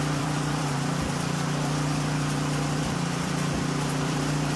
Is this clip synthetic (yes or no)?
yes